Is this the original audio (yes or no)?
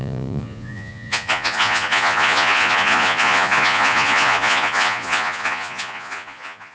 no